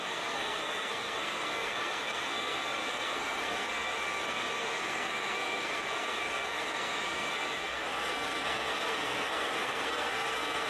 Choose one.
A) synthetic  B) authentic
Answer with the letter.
A